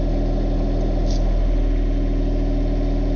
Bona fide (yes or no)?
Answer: yes